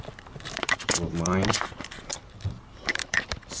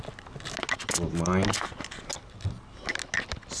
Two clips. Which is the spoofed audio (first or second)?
first